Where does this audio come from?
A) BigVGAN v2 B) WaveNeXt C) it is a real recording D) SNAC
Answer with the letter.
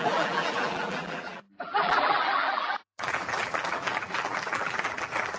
A